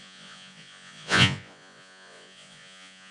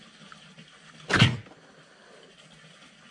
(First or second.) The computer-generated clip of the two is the first